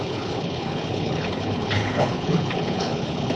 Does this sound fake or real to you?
fake